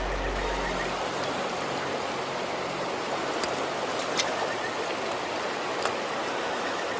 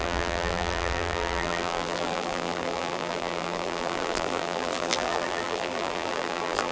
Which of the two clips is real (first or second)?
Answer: first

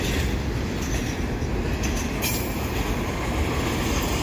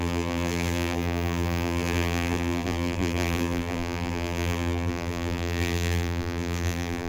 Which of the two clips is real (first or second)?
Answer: first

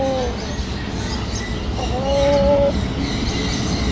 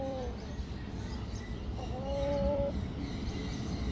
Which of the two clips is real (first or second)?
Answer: first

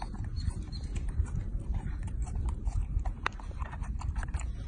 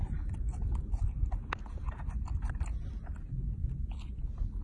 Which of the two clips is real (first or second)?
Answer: second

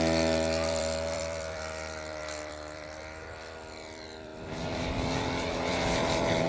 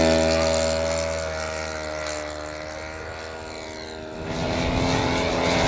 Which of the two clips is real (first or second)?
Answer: second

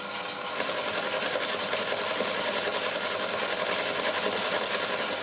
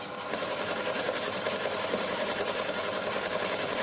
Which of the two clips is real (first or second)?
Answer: first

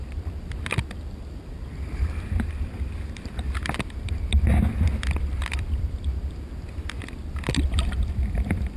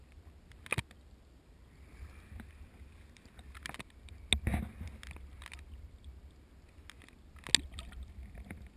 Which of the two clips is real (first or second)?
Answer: second